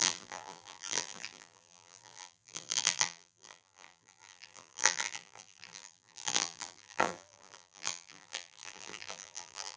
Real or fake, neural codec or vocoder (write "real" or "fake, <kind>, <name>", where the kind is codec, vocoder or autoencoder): fake, vocoder, BigVGAN v2